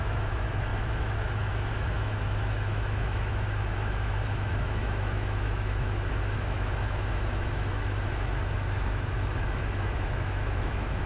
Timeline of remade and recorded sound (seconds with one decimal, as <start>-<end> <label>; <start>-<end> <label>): 0.0-11.1 remade